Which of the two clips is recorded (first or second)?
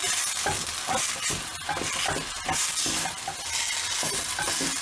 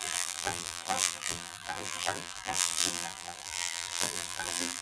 first